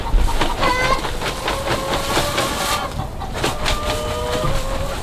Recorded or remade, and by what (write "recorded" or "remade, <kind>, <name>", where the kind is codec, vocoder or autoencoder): recorded